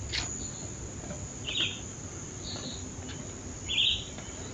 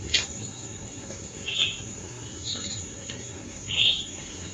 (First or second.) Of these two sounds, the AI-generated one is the second